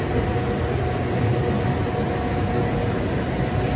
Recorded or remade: recorded